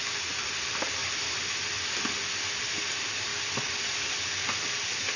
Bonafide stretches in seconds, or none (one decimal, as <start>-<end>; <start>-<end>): 3.3-3.8